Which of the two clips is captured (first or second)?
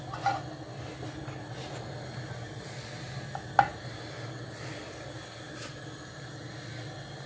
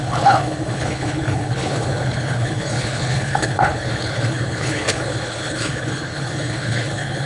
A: first